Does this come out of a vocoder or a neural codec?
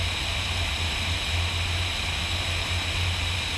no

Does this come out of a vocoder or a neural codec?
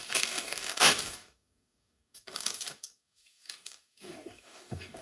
yes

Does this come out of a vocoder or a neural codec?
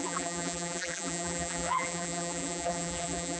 yes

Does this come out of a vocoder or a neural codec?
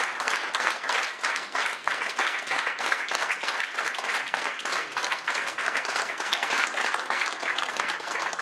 yes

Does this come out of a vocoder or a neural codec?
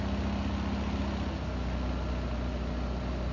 no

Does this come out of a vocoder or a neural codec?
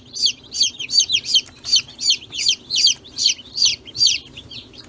yes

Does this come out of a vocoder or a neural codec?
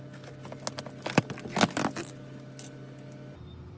no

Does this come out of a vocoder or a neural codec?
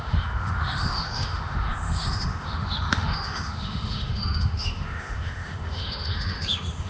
yes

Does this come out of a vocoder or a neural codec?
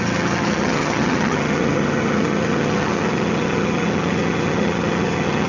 yes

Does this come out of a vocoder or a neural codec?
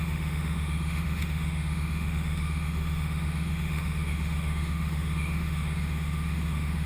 yes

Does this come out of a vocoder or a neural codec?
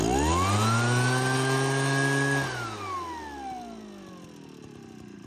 no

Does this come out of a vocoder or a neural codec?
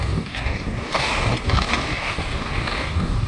yes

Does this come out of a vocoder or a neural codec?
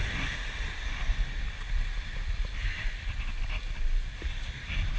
no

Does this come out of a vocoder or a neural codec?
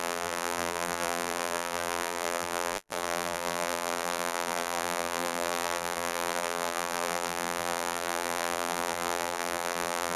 yes